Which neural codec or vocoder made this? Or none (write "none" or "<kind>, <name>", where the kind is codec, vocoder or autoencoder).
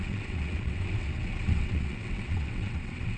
vocoder, WaveNeXt